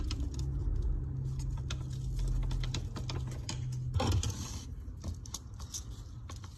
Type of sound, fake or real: real